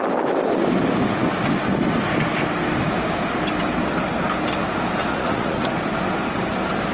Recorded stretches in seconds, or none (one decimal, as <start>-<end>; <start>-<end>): 0.0-5.1; 5.7-6.9